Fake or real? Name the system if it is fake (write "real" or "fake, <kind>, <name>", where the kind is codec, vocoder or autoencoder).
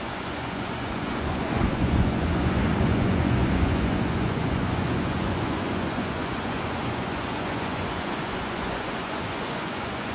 fake, vocoder, Vocos